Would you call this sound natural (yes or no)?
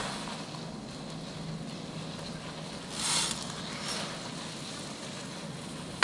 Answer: yes